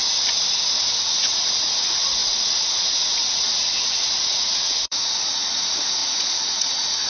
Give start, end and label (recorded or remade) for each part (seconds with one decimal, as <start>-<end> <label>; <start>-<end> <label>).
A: 0.0-1.0 recorded; 1.0-7.1 remade